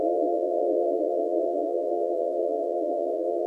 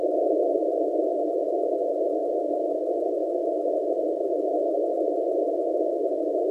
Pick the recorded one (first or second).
second